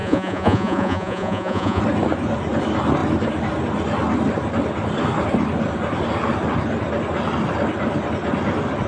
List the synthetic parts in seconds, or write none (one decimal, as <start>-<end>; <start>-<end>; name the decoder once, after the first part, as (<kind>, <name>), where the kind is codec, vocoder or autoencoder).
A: 0.0-1.8 (vocoder, Vocos)